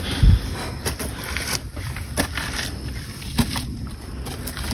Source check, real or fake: fake